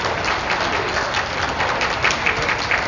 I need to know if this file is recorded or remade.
recorded